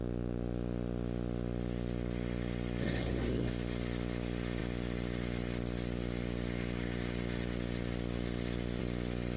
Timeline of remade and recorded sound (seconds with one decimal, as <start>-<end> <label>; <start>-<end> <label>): 0.0-2.8 recorded; 2.8-3.5 remade; 3.5-9.4 recorded